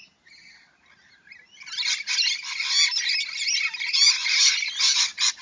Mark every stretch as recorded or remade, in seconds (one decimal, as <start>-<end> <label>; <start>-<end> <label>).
0.0-5.4 recorded